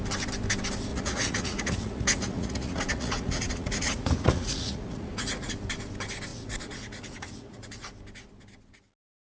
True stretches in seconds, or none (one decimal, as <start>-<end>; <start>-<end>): 0.0-0.9; 5.5-6.3; 7.9-9.3